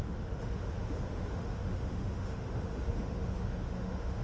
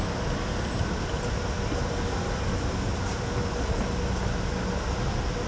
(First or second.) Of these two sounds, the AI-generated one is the first